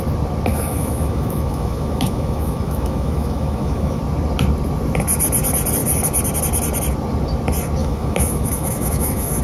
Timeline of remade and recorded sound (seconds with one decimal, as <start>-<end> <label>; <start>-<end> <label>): 0.0-0.5 recorded; 0.5-4.0 remade; 4.0-7.8 recorded; 7.8-9.4 remade